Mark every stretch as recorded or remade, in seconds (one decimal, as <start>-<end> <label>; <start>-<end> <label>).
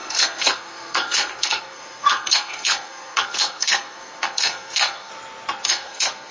0.0-5.1 remade; 5.1-5.7 recorded; 5.7-6.3 remade